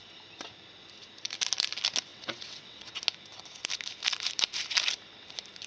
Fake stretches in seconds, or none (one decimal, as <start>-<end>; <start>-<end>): 2.1-2.9